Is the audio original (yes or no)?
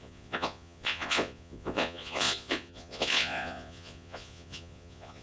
no